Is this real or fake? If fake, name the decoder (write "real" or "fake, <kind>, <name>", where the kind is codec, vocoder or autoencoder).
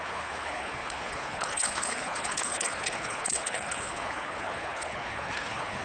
fake, codec, HILCodec